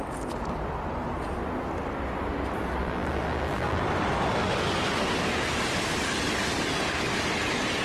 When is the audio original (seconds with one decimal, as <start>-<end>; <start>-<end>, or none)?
0.0-2.8; 3.8-7.8